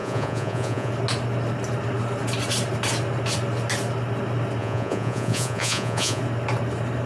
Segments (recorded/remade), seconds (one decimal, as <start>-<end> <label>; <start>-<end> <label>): 0.0-0.9 remade; 0.9-4.6 recorded; 4.6-6.2 remade; 6.2-7.1 recorded